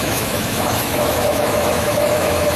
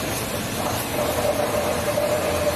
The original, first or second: second